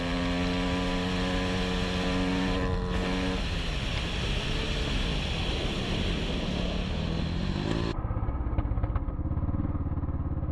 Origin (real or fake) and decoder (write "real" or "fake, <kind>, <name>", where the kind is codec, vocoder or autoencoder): real